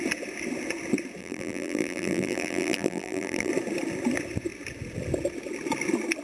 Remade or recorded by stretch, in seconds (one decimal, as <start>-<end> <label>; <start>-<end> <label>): 0.0-1.2 recorded; 1.2-3.5 remade; 3.5-6.2 recorded